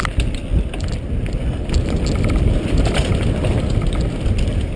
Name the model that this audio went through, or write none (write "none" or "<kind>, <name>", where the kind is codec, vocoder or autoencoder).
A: none